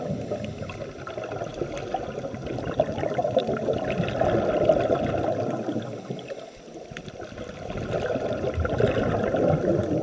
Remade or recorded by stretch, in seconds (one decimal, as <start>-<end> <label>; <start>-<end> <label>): 0.0-10.0 recorded